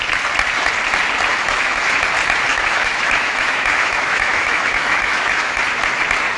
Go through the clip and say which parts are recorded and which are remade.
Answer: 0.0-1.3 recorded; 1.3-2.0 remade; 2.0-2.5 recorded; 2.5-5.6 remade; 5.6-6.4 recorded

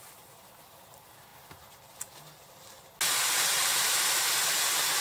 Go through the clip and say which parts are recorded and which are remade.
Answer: 0.0-5.0 recorded

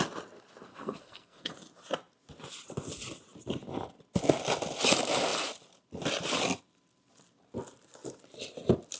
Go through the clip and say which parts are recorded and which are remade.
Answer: 0.0-0.7 recorded; 0.7-1.5 remade; 1.5-9.0 recorded

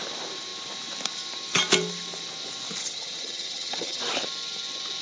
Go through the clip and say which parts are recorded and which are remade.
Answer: 0.0-2.8 recorded; 2.8-4.0 remade; 4.0-5.0 recorded